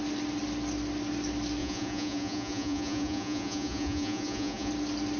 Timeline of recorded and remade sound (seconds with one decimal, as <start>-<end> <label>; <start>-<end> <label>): 0.0-1.6 recorded; 1.6-4.7 remade; 4.7-5.2 recorded